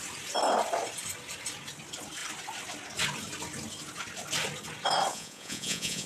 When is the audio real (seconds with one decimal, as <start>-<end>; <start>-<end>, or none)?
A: 0.0-5.1